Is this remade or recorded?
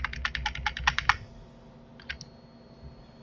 recorded